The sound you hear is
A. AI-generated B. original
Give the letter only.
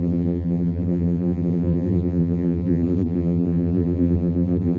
A